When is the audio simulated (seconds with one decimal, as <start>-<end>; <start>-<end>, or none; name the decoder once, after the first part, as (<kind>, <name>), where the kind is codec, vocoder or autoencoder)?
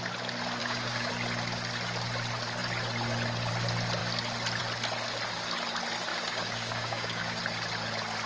0.6-1.1 (codec, DAC); 6.1-7.4